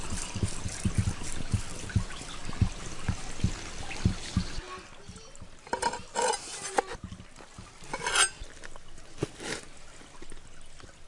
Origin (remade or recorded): recorded